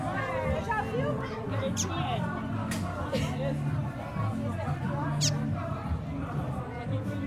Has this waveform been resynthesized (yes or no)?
no